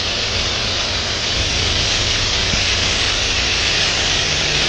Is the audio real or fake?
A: fake